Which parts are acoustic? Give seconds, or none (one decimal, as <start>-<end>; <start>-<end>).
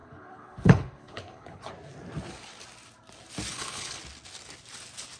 1.7-3.5; 4.0-5.2